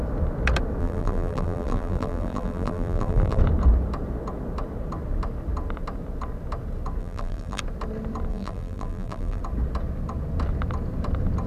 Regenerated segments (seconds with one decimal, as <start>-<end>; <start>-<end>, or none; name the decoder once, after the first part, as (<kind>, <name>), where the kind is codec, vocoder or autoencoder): 0.8-3.4 (vocoder, BigVGAN v2); 7.0-7.6; 8.3-9.4